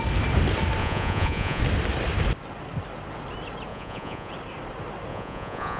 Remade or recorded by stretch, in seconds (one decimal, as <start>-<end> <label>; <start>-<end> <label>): 0.0-0.8 recorded; 0.8-1.6 remade; 1.6-3.7 recorded; 3.7-4.3 remade; 4.3-5.1 recorded; 5.1-5.8 remade